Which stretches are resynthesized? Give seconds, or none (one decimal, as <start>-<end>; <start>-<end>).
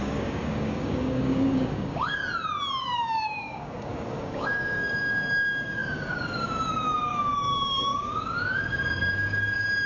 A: 0.0-2.2; 2.8-9.9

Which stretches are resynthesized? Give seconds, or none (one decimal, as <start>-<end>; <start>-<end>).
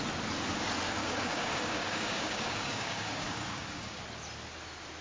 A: 1.0-4.0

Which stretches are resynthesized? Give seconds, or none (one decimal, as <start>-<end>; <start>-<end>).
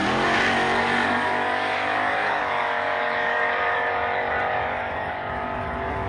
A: 0.8-6.1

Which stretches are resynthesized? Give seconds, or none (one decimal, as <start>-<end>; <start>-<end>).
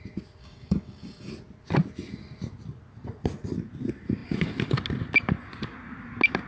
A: 0.4-1.3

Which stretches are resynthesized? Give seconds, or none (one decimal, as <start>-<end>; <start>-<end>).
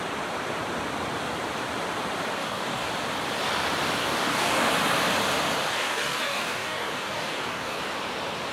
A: 2.4-2.9; 4.0-4.7; 5.7-7.8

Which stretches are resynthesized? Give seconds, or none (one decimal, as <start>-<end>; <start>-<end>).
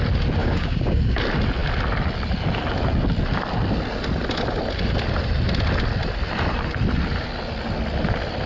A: 0.4-1.2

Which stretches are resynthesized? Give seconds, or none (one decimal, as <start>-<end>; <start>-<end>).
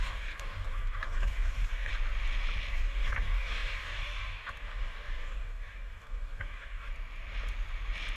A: 0.0-1.9; 2.7-6.9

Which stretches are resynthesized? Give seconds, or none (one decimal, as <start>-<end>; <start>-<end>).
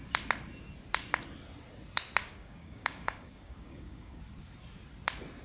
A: 2.2-4.2